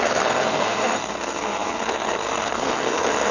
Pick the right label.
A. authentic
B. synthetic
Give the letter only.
B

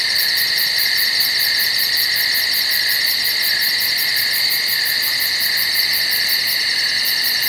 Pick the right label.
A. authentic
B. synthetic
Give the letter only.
A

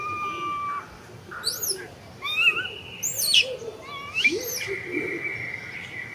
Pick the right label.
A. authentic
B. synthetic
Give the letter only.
A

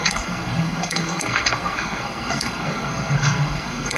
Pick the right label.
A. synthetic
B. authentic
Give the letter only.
A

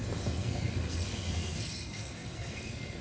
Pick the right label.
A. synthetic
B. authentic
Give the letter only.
A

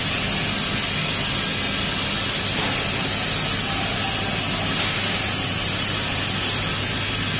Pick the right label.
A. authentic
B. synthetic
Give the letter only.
A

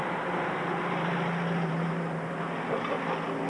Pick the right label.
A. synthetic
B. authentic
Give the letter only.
B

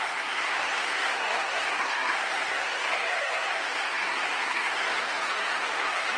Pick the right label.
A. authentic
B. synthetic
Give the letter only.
B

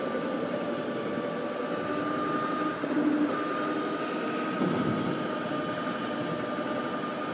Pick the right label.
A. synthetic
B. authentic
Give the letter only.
B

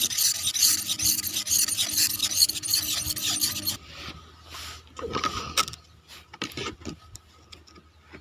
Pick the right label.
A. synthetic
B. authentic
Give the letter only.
B